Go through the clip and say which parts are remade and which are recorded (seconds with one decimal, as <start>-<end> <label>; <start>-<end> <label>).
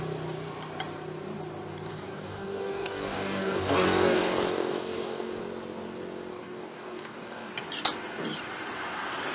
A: 0.0-1.9 recorded; 1.9-5.4 remade; 5.4-6.3 recorded; 6.3-7.5 remade; 7.5-9.3 recorded